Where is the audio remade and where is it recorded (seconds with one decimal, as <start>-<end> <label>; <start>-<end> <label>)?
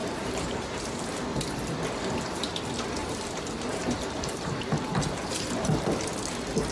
0.0-1.0 remade; 1.0-3.0 recorded; 3.0-6.1 remade; 6.1-6.7 recorded